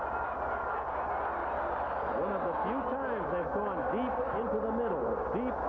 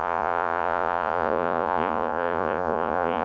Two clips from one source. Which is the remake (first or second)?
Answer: second